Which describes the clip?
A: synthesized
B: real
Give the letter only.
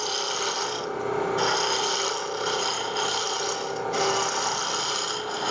B